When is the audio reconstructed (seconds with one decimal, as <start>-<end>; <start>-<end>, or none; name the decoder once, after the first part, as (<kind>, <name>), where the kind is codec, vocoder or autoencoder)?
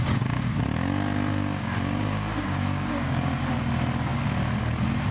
1.3-3.3 (codec, DAC)